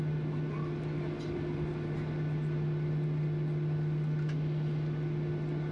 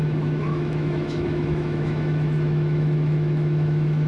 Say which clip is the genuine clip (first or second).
first